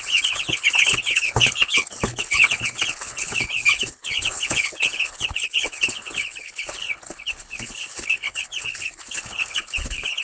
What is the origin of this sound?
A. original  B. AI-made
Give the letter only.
B